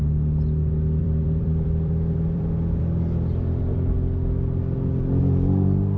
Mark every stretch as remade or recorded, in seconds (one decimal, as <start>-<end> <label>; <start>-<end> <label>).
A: 0.0-1.0 recorded; 1.0-2.8 remade; 2.8-6.0 recorded